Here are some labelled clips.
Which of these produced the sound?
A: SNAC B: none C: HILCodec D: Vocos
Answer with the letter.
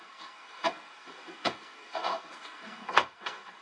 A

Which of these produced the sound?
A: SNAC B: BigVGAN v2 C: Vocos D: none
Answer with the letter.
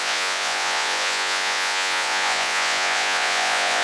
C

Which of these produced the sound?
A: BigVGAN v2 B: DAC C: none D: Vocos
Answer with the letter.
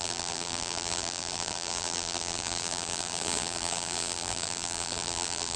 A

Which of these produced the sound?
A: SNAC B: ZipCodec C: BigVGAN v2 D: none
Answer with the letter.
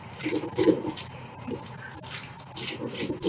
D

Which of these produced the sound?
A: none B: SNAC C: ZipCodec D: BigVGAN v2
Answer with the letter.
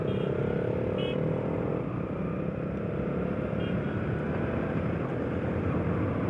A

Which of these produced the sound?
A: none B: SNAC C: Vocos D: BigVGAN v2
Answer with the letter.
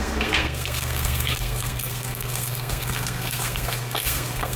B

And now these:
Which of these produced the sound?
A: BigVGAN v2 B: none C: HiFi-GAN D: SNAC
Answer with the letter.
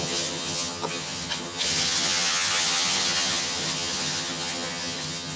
C